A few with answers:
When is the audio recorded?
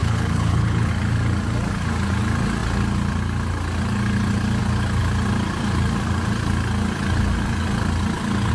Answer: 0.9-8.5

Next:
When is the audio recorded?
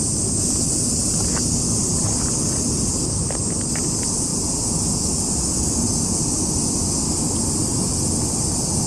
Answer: 0.0-8.9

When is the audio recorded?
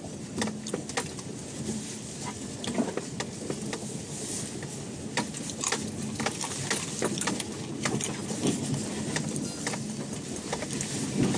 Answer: 0.0-11.4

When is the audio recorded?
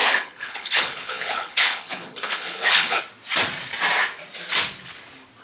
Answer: 3.0-5.4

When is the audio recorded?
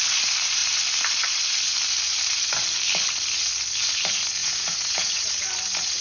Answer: 0.0-4.4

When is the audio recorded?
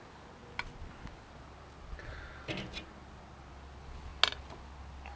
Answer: 0.0-5.2